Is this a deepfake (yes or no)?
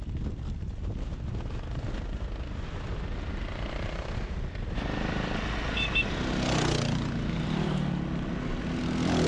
no